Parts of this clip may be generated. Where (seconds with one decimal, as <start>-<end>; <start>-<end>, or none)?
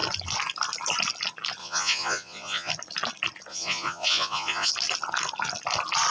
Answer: 1.6-2.7; 3.5-4.7